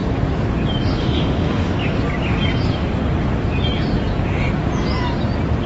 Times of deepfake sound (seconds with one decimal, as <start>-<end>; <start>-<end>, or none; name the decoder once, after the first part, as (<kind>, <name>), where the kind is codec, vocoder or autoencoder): 1.0-1.7 (autoencoder, DAC-VAE)